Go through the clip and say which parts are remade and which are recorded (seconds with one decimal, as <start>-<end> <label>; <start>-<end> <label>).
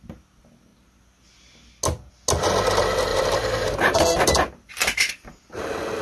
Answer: 0.0-3.1 recorded; 3.1-5.1 remade; 5.1-6.0 recorded